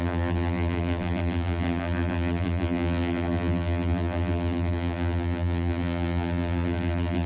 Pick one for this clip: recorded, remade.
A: remade